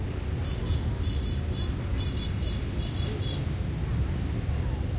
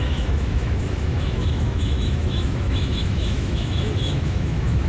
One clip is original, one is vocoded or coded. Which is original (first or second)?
first